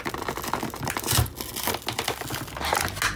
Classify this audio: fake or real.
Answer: real